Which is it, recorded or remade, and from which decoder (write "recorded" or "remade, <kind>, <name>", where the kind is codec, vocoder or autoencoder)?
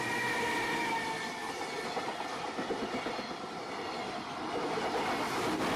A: recorded